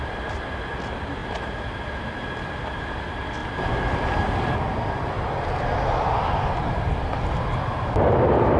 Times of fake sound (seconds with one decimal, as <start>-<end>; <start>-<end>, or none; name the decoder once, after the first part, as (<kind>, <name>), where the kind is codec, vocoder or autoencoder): none